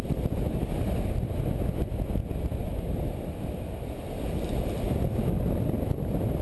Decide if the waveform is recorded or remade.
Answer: recorded